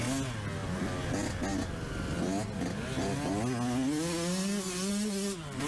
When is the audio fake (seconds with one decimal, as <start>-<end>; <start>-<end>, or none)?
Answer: none